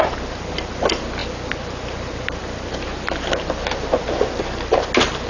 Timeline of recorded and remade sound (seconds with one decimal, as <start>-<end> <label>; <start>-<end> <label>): 0.0-5.3 recorded